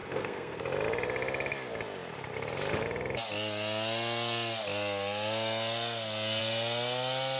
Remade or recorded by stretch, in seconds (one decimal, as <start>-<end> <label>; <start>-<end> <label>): 0.0-0.6 remade; 0.6-7.4 recorded